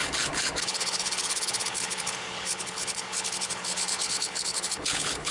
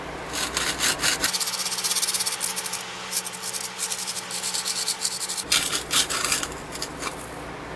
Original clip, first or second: second